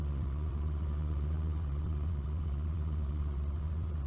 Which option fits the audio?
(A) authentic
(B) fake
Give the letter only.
B